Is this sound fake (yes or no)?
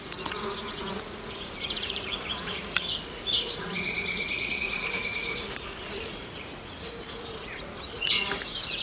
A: yes